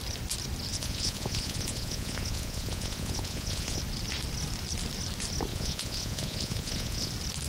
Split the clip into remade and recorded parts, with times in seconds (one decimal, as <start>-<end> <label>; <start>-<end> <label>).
0.0-0.7 recorded; 0.7-3.8 remade; 3.8-5.5 recorded; 5.5-7.1 remade; 7.1-7.5 recorded